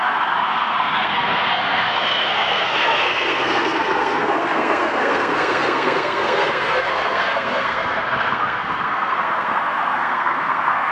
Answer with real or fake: fake